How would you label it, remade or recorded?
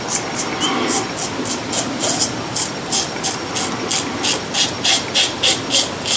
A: recorded